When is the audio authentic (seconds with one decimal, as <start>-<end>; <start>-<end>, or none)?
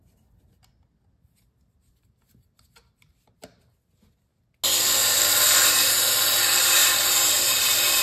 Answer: 0.0-6.8